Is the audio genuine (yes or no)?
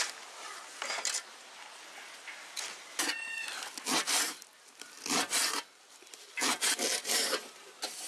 yes